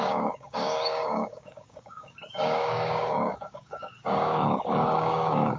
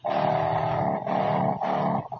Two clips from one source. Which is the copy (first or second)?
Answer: first